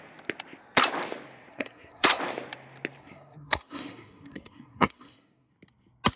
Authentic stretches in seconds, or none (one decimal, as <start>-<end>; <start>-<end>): 0.0-1.5; 2.2-3.0; 5.5-6.2